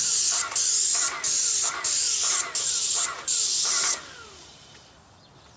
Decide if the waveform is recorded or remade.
recorded